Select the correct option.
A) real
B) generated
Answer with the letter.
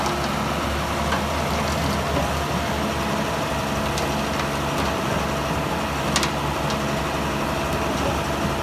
A